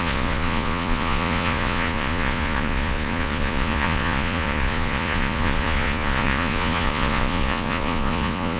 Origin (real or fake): fake